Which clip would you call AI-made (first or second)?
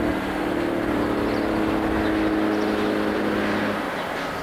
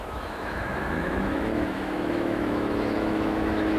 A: second